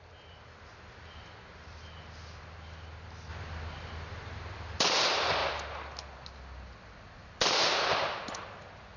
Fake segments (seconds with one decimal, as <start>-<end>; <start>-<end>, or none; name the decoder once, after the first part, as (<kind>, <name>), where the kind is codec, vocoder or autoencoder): none